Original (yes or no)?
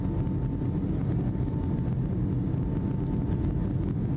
yes